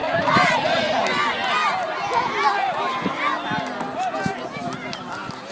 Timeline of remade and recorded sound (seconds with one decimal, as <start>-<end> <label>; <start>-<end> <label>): 0.0-1.0 remade; 1.0-5.5 recorded